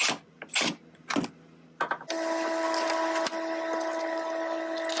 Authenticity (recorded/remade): recorded